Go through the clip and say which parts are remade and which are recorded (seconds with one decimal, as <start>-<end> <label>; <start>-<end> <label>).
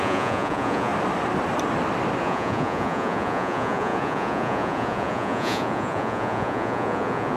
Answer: 0.0-0.9 remade; 0.9-2.2 recorded; 2.2-7.4 remade